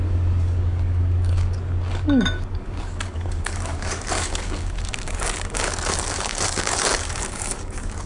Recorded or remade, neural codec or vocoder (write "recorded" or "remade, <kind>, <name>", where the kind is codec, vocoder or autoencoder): remade, codec, DAC